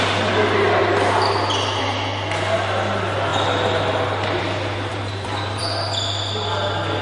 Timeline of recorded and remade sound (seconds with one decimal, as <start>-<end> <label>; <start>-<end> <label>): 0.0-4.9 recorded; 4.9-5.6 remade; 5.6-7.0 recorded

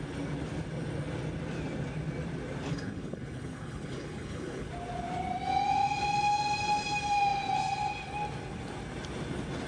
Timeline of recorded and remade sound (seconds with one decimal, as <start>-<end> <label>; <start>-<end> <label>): 0.0-2.7 recorded; 2.7-4.7 remade; 4.7-9.7 recorded

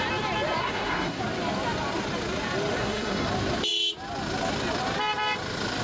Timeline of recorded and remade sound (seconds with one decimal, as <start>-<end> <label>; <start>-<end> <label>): 0.0-0.6 recorded; 0.6-1.2 remade; 1.2-2.8 recorded; 2.8-3.3 remade; 3.3-5.8 recorded

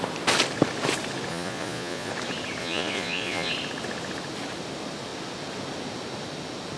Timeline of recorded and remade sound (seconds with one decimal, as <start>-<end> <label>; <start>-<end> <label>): 0.0-1.3 recorded; 1.3-2.1 remade; 2.1-2.6 recorded; 2.6-3.5 remade; 3.5-6.8 recorded

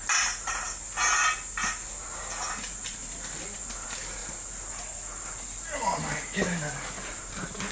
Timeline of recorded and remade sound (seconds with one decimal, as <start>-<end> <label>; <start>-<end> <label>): 0.0-7.7 recorded

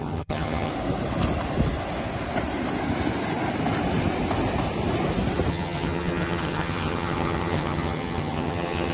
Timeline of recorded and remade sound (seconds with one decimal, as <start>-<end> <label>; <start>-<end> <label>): 0.0-0.7 remade; 0.7-5.5 recorded; 5.5-8.9 remade

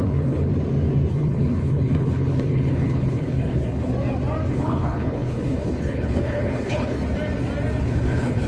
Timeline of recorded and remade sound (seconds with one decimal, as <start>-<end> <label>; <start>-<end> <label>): 0.0-0.5 remade; 0.5-1.1 recorded; 1.1-3.9 remade; 3.9-4.5 recorded; 4.5-7.0 remade; 7.0-7.8 recorded; 7.8-8.5 remade